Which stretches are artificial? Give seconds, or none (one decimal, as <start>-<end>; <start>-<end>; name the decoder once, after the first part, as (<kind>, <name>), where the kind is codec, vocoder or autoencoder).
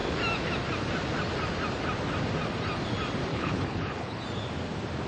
3.3-4.2 (codec, HILCodec)